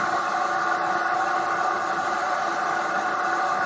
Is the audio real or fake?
real